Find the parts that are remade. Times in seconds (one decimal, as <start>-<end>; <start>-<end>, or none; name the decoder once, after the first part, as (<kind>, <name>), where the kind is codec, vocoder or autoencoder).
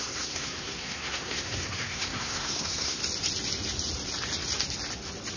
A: 0.0-3.0 (codec, SNAC)